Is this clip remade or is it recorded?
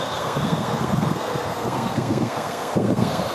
remade